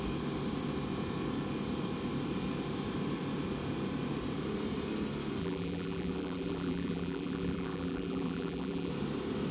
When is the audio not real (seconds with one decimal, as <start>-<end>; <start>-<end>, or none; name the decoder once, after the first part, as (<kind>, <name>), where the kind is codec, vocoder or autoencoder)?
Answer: 5.4-8.9 (vocoder, BigVGAN v2)